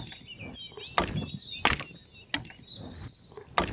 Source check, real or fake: real